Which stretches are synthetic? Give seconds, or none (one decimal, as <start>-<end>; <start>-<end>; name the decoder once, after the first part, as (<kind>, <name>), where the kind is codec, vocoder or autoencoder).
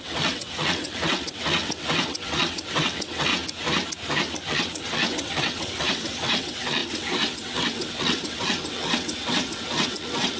0.0-3.3 (vocoder, WaveNeXt); 4.5-10.4